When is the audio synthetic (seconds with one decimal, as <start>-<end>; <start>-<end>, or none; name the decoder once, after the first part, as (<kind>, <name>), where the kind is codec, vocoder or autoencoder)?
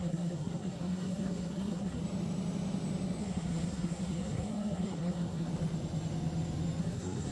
0.0-2.0 (codec, SNAC); 3.2-5.5; 6.8-7.3